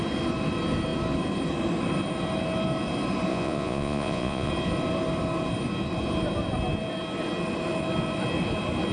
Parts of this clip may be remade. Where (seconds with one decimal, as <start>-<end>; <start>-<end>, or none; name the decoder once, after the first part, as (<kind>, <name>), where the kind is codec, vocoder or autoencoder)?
3.3-4.5 (vocoder, Vocos)